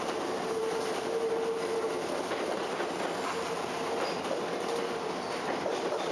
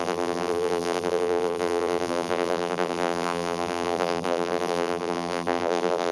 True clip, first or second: first